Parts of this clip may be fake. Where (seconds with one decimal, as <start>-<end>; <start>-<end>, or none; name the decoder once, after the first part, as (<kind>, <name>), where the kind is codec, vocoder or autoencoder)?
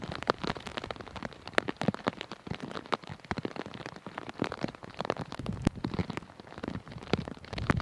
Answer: 0.0-0.7 (vocoder, BigVGAN v2); 1.8-3.1; 4.1-7.8